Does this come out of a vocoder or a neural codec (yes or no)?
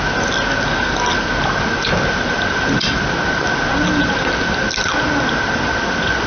no